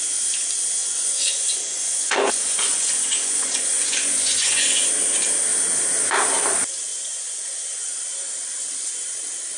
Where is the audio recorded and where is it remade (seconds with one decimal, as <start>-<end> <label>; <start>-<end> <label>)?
0.0-0.8 recorded; 0.8-4.9 remade; 4.9-6.9 recorded; 6.9-8.0 remade; 8.0-9.6 recorded